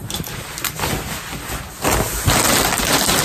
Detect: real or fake real